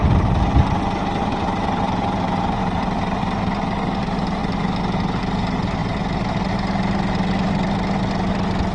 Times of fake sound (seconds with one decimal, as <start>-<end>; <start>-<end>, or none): 1.3-2.6